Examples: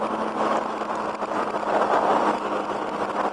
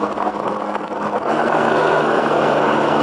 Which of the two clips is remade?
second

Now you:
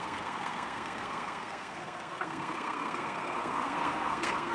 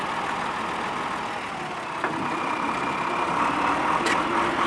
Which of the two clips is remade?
first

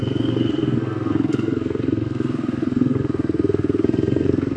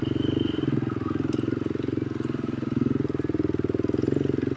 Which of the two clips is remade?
first